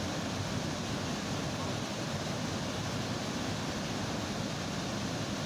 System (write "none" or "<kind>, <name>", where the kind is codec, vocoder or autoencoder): none